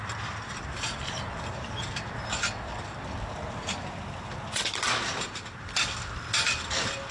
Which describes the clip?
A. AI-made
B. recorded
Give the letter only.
B